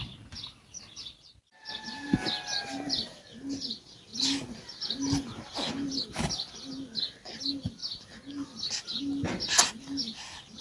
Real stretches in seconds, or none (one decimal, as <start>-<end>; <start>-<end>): 0.0-10.6